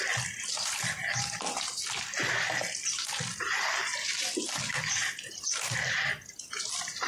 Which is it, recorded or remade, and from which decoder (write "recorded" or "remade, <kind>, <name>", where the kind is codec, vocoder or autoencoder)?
recorded